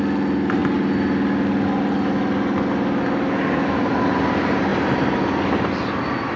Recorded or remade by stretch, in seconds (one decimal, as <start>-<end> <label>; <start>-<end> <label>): 0.0-6.4 recorded